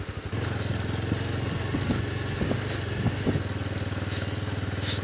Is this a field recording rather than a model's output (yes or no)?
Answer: yes